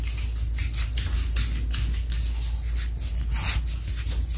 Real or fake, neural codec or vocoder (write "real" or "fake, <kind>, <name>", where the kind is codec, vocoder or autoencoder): real